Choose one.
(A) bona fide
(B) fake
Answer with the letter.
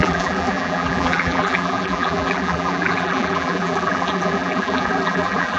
B